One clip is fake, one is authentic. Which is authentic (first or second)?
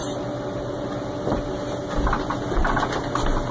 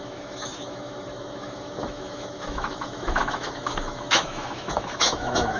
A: first